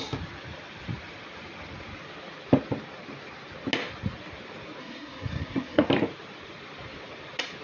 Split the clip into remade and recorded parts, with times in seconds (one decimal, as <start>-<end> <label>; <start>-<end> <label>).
0.0-4.8 recorded; 4.8-5.9 remade; 5.9-7.6 recorded